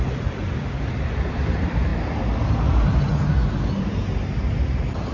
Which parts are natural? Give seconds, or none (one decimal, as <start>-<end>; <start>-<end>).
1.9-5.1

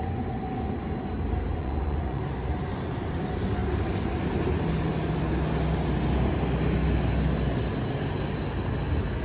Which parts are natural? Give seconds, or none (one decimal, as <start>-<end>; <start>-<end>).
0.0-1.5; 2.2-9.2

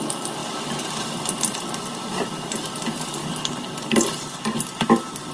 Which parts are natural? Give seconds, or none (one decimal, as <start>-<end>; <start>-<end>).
0.0-5.3